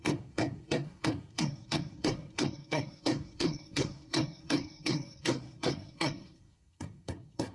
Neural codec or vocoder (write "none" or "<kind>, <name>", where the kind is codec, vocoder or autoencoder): codec, SNAC